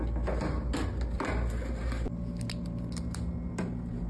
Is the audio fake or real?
real